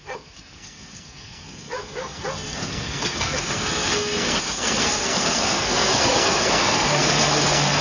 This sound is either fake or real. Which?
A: fake